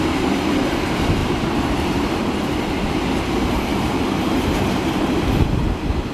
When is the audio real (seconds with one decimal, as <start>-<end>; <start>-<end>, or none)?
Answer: 0.0-1.2; 2.2-3.7